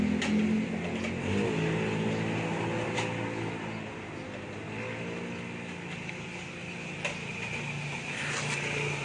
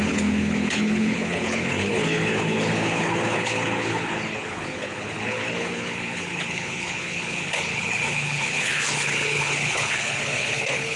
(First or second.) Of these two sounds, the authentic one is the first